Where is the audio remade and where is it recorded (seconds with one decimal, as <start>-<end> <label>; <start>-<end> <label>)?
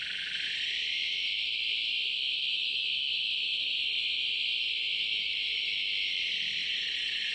0.0-6.6 recorded; 6.6-7.3 remade